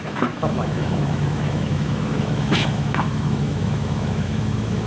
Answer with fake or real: fake